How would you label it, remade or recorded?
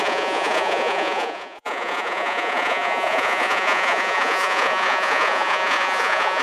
remade